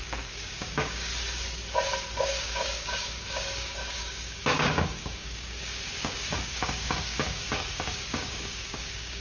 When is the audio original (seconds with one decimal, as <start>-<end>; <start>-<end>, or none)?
1.1-2.2

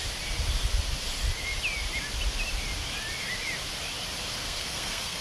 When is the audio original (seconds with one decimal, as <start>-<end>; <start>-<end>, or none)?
0.0-4.4